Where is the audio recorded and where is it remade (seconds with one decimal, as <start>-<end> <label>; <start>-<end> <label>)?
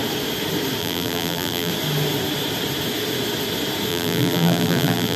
0.0-0.8 recorded; 0.8-1.7 remade; 1.7-3.9 recorded; 3.9-5.2 remade